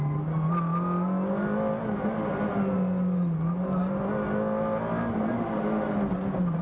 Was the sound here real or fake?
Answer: real